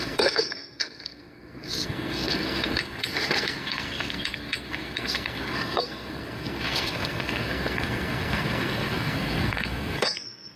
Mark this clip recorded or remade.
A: remade